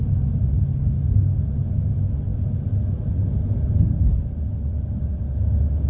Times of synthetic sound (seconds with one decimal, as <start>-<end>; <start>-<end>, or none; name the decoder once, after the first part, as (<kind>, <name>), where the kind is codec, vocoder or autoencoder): none